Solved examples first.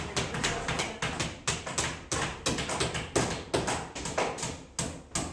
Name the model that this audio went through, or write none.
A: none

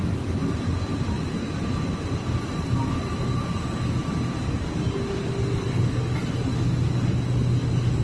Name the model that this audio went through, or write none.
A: none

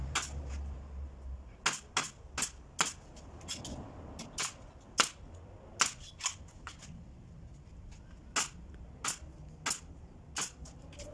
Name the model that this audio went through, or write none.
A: none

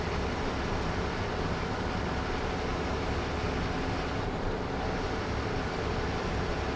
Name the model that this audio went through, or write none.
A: none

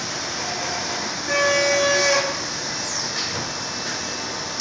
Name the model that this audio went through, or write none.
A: none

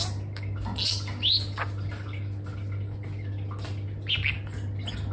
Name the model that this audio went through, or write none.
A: none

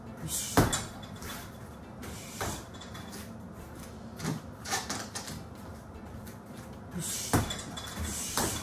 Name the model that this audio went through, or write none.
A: none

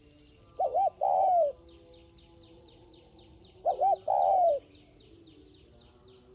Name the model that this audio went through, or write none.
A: none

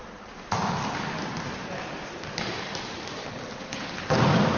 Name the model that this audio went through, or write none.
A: vocoder, BigVGAN v2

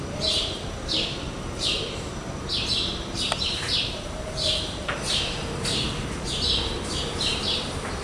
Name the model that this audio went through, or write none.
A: vocoder, BigVGAN v2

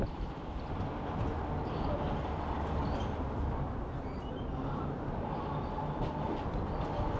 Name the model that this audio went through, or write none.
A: none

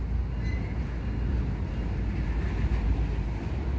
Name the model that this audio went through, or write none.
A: none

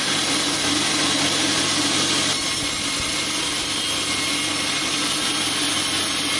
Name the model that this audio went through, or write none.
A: none